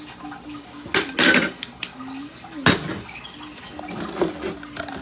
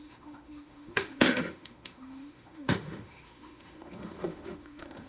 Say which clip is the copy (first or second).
second